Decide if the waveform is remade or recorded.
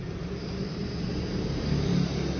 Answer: recorded